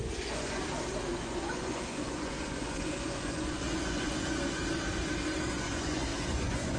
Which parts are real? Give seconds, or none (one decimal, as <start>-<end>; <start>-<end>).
0.6-1.1; 4.6-5.5